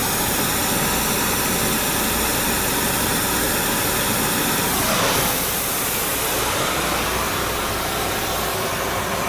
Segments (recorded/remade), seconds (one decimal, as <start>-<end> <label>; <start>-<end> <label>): 0.0-9.3 recorded